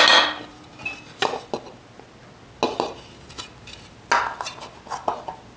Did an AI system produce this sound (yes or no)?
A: no